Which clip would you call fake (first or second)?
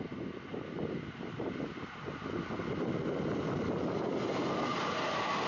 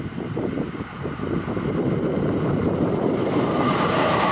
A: second